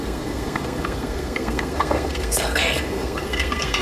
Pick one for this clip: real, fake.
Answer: fake